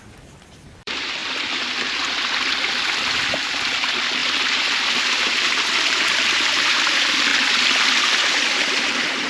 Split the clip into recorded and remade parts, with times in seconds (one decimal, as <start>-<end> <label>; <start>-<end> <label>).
0.0-1.2 remade; 1.2-3.4 recorded; 3.4-7.3 remade; 7.3-8.0 recorded; 8.0-9.3 remade